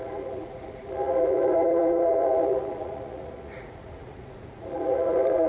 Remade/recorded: remade